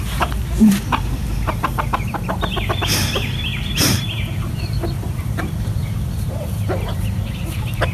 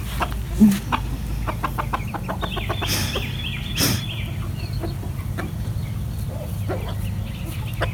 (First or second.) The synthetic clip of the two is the first